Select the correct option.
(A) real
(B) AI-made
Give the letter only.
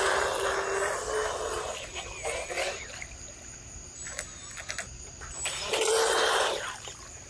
A